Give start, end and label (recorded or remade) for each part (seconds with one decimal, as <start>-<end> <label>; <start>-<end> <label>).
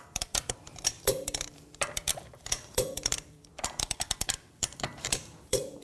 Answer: 0.0-5.8 remade